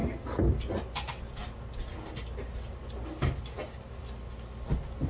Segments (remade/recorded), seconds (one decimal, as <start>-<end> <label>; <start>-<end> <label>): 0.0-5.1 recorded